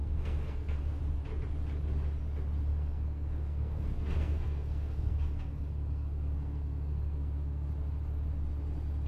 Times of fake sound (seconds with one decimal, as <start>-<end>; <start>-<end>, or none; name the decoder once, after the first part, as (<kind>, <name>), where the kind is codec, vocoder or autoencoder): 0.0-1.0 (codec, SNAC); 2.7-7.7